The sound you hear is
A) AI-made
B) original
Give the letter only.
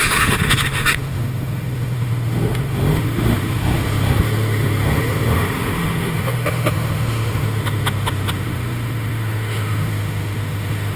A